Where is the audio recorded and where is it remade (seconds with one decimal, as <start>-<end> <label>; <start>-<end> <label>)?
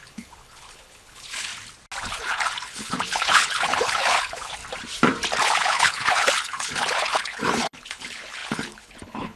0.0-1.5 remade; 1.5-2.0 recorded; 2.0-4.6 remade; 4.6-5.4 recorded; 5.4-9.4 remade